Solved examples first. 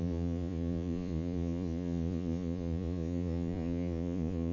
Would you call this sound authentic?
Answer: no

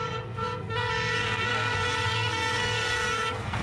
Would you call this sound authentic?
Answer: no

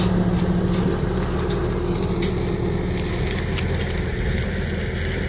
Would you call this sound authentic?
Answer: yes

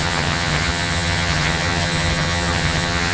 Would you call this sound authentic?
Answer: no